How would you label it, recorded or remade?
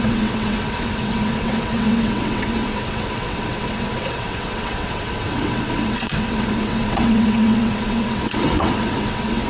remade